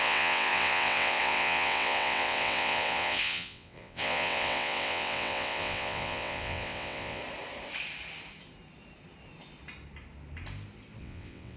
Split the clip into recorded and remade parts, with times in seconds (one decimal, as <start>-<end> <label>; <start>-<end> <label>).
0.0-7.2 remade; 7.2-11.0 recorded; 11.0-11.6 remade